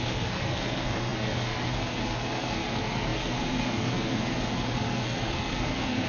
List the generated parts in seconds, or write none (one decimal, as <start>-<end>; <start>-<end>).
0.0-6.1